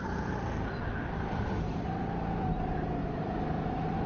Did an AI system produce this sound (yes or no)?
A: no